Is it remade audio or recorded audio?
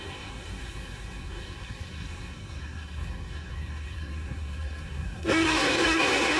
remade